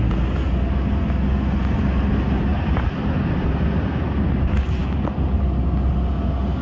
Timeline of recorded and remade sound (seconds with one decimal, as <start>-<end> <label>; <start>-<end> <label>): 0.0-6.6 recorded